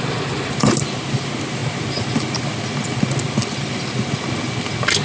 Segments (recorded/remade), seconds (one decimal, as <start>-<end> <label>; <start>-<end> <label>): 0.0-5.0 recorded